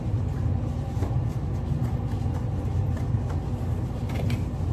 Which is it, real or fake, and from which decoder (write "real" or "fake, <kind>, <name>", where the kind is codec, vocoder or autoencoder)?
real